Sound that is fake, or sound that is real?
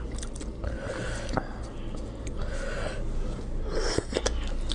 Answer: real